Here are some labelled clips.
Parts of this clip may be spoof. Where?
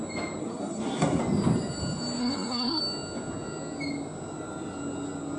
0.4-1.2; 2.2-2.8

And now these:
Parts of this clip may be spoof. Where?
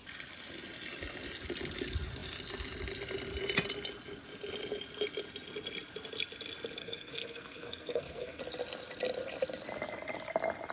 6.8-8.4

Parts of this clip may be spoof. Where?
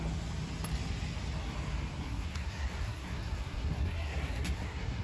2.0-5.0